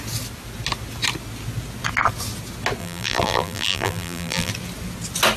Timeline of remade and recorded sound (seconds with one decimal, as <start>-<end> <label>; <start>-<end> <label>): 0.0-2.8 recorded; 2.8-4.5 remade; 4.5-5.4 recorded